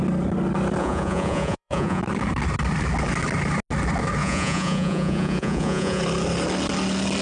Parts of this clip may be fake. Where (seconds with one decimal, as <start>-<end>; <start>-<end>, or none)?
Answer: 0.8-2.0; 4.2-6.0

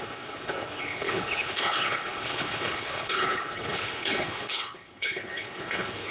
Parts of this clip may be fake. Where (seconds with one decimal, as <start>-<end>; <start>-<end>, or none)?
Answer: 0.0-6.1

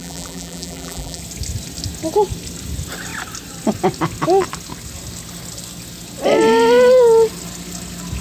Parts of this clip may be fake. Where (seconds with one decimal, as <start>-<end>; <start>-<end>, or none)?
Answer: 0.0-1.2

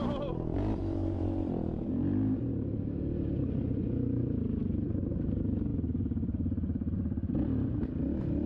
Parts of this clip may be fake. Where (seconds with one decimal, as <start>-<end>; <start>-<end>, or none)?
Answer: 0.0-5.7

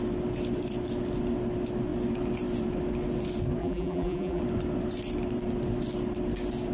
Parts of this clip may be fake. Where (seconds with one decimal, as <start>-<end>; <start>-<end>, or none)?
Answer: 3.6-4.4

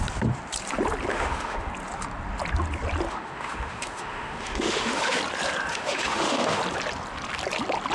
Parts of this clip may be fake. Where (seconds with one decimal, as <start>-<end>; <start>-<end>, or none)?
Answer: 1.1-1.7; 3.1-5.2; 5.7-6.6